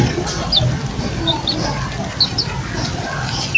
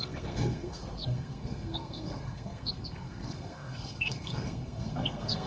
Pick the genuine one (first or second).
first